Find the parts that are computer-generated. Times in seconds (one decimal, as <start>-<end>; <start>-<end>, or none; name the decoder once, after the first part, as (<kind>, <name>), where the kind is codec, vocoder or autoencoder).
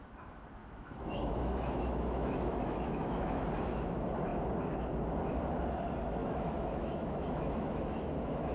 0.6-3.4 (autoencoder, DAC-VAE); 6.2-8.1